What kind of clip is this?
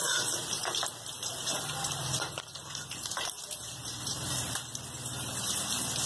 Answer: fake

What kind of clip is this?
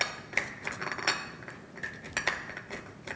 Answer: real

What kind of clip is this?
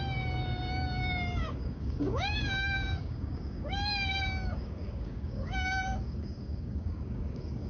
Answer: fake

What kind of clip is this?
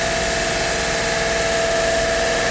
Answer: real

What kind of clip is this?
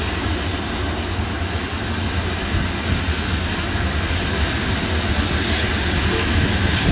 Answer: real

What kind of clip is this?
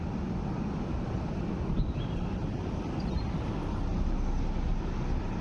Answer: real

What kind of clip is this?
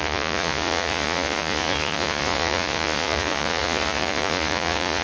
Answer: fake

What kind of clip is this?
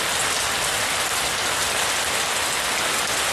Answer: real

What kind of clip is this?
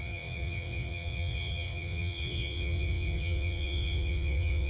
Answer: fake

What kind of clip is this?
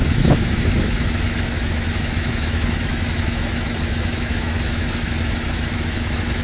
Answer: fake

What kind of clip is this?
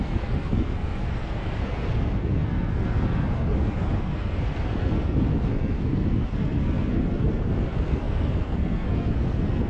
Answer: fake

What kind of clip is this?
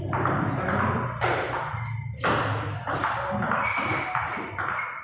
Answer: real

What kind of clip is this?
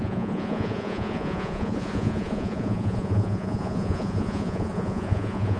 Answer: fake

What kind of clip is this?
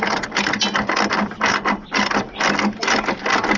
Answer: real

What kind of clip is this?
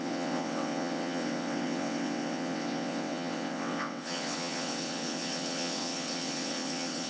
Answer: fake